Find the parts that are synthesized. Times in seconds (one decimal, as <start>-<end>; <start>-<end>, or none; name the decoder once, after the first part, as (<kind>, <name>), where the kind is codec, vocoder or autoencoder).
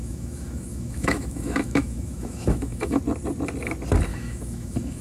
0.0-3.0 (autoencoder, DAC-VAE); 4.1-5.0